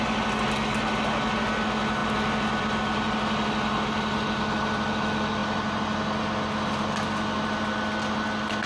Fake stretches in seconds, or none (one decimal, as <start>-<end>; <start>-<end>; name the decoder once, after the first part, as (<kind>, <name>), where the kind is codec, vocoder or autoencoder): none